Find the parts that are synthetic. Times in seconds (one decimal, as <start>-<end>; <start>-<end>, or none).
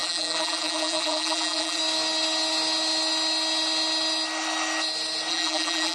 0.0-1.8; 5.3-5.9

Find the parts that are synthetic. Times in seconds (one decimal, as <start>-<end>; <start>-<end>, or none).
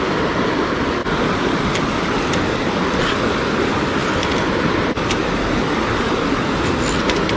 none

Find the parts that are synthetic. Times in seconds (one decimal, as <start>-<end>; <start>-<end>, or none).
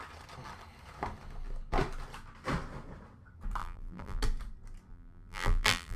3.6-4.2; 4.9-6.0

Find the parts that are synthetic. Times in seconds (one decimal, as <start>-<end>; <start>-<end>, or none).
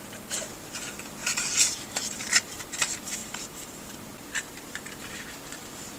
1.2-2.6; 3.2-4.9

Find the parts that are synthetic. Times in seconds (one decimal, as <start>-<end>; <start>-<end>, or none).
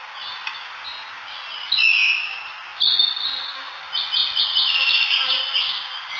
4.2-5.4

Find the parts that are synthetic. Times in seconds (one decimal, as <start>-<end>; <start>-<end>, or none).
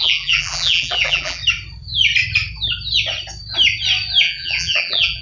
0.0-1.4; 4.2-5.2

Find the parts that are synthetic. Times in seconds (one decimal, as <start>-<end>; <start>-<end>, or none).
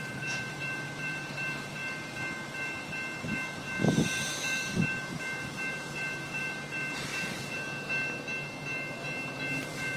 0.0-1.8; 3.2-7.1; 9.2-10.0